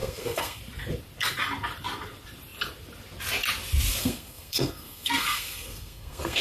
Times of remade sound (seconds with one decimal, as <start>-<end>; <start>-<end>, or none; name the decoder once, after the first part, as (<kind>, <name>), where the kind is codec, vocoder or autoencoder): 0.0-0.6 (codec, SNAC); 4.0-6.4